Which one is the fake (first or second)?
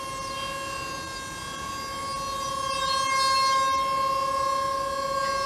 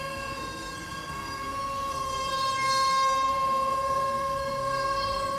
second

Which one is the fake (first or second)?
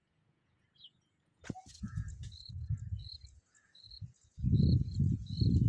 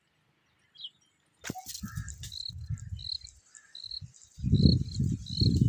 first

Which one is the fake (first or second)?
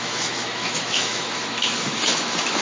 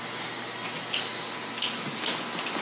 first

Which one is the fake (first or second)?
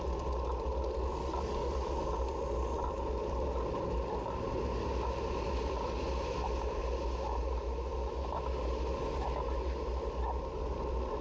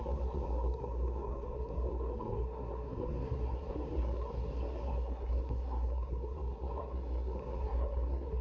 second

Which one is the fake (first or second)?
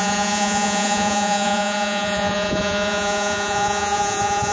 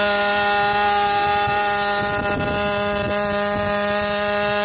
first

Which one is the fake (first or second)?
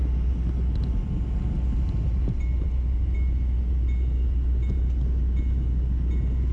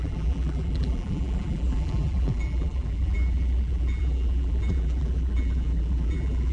second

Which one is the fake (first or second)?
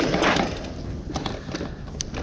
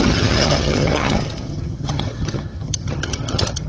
second